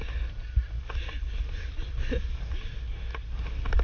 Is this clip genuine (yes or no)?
yes